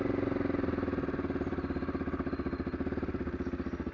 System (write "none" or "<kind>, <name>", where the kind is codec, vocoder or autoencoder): none